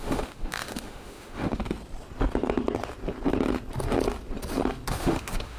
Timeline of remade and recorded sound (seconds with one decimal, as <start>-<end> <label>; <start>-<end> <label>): 0.0-1.6 remade; 1.6-4.9 recorded; 4.9-5.6 remade